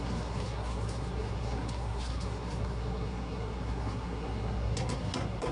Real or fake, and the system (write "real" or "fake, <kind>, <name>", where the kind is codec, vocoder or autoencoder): fake, codec, SNAC